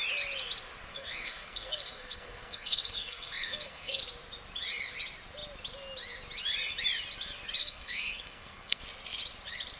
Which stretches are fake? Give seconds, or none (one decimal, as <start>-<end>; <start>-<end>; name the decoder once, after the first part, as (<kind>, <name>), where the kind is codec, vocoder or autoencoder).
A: 0.9-4.0 (codec, SNAC); 7.6-8.8